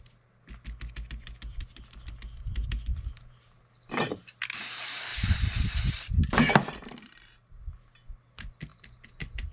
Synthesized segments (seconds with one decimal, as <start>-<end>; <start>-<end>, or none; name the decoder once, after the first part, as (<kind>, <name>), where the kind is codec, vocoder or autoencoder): 1.5-2.1 (vocoder, BigVGAN v2); 2.9-3.6; 5.1-7.7; 8.7-9.5